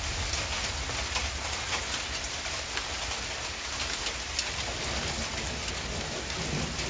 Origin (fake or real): real